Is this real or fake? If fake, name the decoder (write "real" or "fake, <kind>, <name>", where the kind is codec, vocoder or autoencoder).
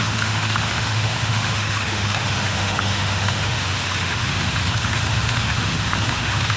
fake, autoencoder, DAC-VAE